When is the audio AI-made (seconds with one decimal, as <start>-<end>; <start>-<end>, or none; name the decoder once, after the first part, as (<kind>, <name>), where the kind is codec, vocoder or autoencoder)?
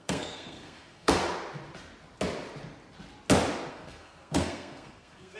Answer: 0.0-1.2 (codec, SNAC); 3.7-5.4